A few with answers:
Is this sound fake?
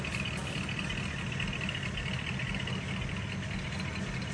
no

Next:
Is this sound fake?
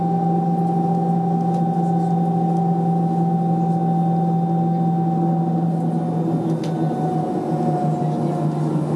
no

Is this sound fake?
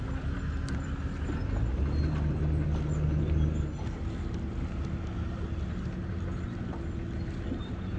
no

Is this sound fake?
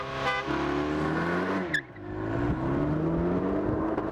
no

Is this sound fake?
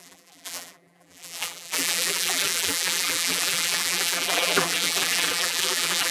yes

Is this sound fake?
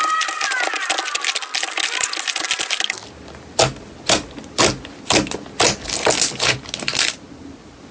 no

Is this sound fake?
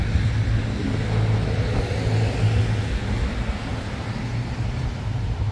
no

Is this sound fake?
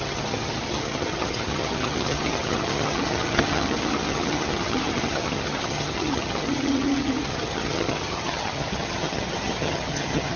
yes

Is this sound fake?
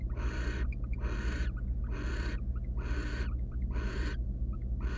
no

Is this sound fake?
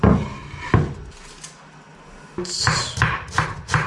no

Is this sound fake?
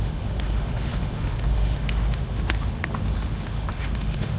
yes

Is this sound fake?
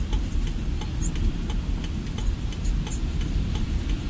no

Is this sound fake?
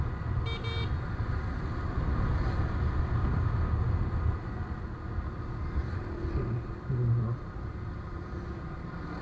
no